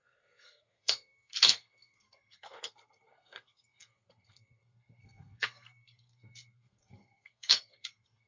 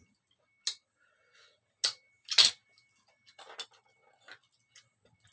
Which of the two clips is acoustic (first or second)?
second